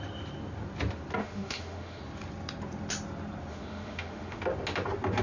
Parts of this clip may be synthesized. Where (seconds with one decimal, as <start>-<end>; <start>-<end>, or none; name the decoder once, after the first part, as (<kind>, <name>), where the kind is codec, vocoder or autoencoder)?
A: 1.2-2.0 (autoencoder, DAC-VAE); 3.5-4.4

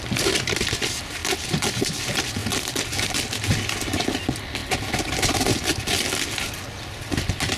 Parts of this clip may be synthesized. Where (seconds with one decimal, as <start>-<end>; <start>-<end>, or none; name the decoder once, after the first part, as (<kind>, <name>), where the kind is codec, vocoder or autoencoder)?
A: none

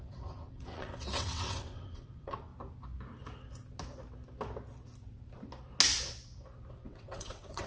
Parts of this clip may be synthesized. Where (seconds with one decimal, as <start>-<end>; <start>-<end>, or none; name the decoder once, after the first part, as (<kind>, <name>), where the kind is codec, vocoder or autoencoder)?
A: 0.0-2.5 (vocoder, WaveNeXt); 6.7-7.7

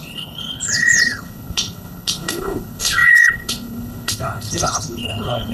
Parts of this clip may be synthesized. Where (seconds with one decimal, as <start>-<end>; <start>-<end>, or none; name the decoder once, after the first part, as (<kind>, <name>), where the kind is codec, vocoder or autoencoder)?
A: 0.0-5.5 (codec, HILCodec)